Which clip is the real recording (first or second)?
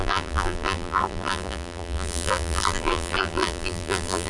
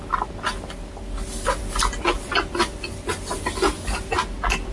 second